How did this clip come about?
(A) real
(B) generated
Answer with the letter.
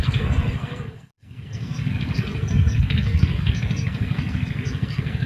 B